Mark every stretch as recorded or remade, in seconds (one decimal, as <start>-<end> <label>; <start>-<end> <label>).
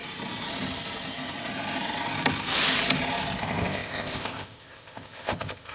0.0-3.4 recorded; 3.4-5.7 remade